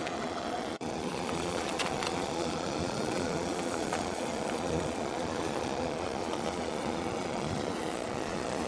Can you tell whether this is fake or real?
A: fake